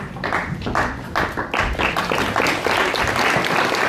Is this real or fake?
real